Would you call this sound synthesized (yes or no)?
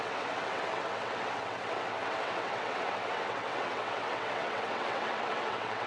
yes